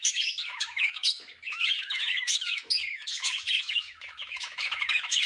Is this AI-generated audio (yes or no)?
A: yes